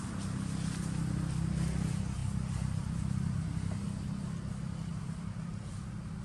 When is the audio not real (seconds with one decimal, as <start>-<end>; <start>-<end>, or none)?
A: 4.9-5.8

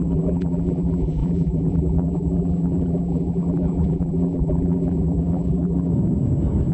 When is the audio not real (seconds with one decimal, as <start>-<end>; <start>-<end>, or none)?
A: 0.0-5.9

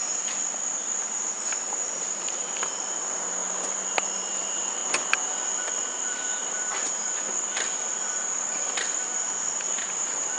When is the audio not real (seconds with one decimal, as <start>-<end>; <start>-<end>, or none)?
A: 0.0-4.8; 5.6-10.4